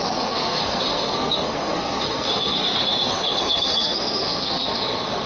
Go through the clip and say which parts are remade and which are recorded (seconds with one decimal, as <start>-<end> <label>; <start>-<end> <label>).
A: 0.0-5.3 remade